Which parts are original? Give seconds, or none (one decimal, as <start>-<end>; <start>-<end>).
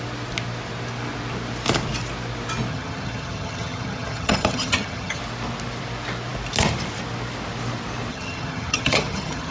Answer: 0.0-2.7; 5.2-8.1